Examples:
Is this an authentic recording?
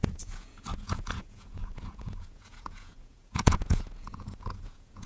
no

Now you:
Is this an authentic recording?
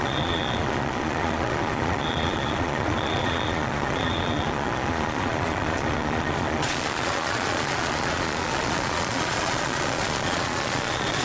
no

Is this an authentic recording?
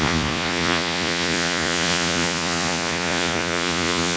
no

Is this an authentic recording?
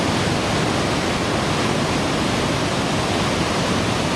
yes